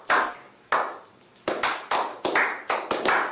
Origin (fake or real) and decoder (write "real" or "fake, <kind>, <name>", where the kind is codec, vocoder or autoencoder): real